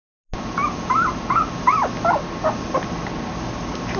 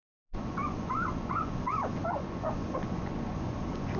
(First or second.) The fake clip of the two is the second